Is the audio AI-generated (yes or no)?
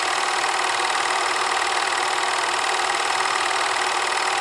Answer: no